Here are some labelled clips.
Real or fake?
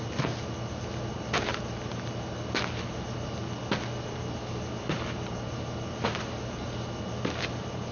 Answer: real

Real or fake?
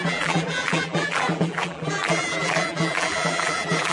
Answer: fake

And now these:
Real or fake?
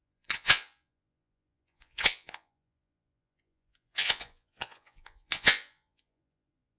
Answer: fake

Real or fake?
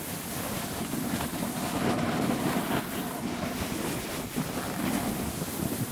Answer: real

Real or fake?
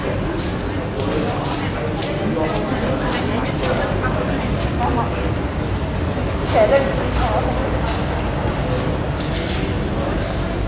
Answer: real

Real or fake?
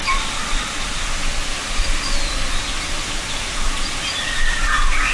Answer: real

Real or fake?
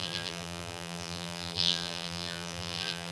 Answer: fake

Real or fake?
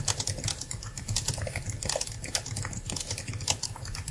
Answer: real